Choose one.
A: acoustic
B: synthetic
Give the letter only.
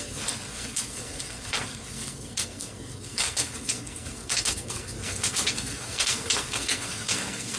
B